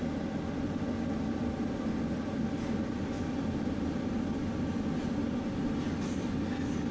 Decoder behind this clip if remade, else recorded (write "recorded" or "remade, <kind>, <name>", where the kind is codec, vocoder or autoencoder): recorded